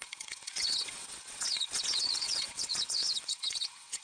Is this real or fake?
fake